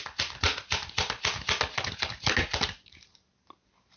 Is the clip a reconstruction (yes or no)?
no